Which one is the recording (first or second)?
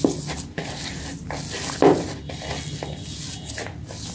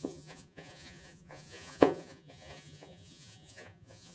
first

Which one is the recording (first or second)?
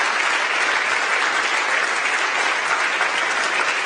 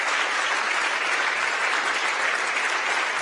first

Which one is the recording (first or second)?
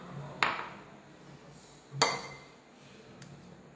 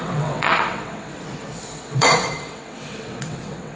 first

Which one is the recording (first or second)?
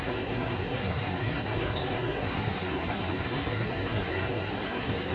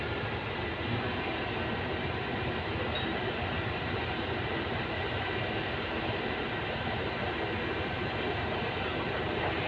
second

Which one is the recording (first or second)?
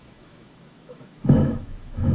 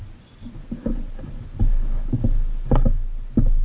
second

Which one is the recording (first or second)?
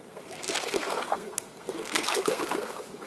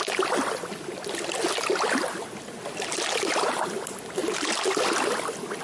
second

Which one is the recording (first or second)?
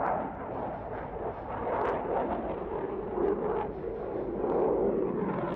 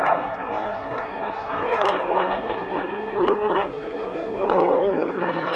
first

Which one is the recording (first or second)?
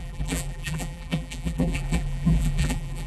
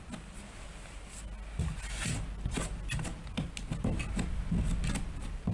second